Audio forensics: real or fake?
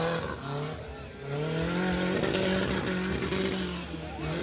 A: real